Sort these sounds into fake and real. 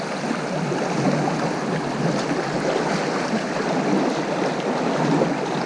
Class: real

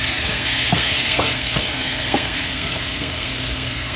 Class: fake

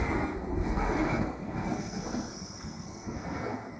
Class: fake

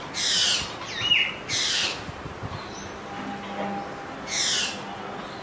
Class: real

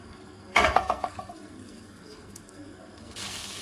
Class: fake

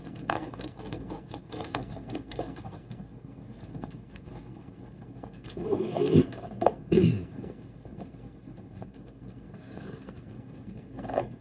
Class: fake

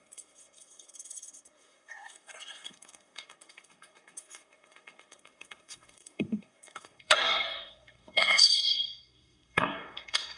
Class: fake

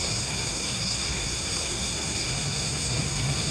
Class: fake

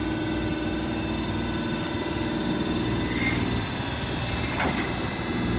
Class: real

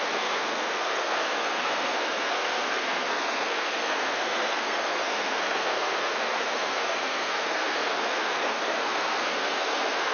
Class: fake